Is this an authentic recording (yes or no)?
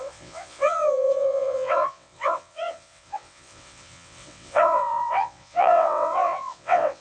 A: no